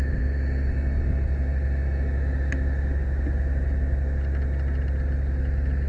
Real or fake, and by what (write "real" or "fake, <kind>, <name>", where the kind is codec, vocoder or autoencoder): real